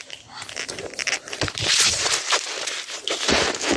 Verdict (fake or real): real